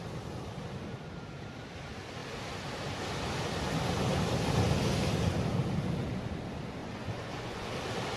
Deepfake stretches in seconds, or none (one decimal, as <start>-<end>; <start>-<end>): 6.8-7.7